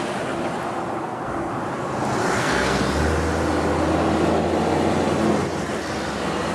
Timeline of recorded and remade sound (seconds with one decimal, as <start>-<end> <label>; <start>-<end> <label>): 0.0-1.0 recorded; 1.0-1.5 remade; 1.5-2.2 recorded; 2.2-2.8 remade; 2.8-6.5 recorded